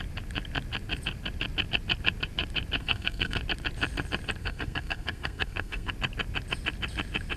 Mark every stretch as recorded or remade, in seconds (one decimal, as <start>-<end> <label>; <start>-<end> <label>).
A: 0.0-2.8 recorded; 2.8-3.4 remade; 3.4-4.4 recorded; 4.4-5.9 remade; 5.9-7.4 recorded